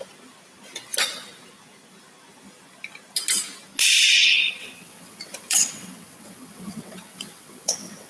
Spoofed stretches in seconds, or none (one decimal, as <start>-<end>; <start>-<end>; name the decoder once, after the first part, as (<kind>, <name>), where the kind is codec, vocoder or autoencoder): 4.6-8.1 (vocoder, WaveNeXt)